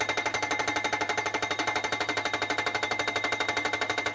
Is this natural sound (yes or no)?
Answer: yes